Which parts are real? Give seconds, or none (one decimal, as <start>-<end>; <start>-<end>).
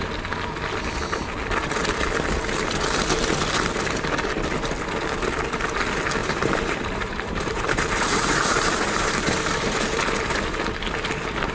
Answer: 0.0-6.2; 9.9-11.5